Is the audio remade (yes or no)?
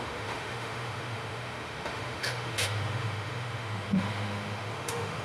yes